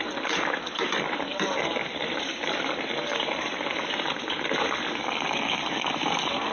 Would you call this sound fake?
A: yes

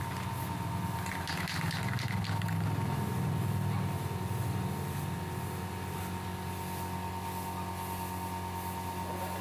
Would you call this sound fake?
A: no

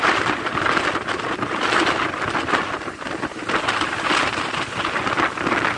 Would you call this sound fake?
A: no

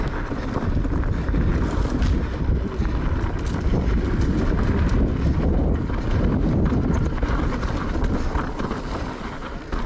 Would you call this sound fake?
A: no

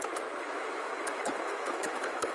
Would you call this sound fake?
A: yes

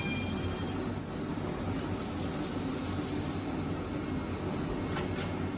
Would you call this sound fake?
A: no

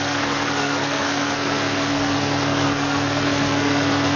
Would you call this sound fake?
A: yes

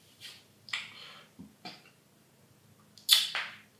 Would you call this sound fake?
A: no